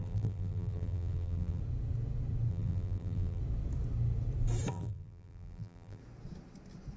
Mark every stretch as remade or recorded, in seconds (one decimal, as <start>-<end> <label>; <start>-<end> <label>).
0.0-1.6 remade; 1.6-2.5 recorded; 2.5-3.4 remade; 3.4-4.7 recorded; 4.7-6.0 remade; 6.0-7.0 recorded